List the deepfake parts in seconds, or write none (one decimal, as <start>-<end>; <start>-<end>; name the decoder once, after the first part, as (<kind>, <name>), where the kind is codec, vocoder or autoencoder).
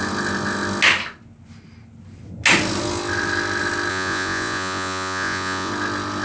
3.9-5.7 (vocoder, Vocos)